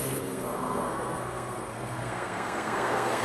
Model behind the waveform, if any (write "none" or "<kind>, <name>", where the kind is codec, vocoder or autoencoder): codec, SNAC